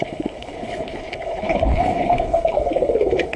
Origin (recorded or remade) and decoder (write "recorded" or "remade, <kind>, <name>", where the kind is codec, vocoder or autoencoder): remade, codec, HILCodec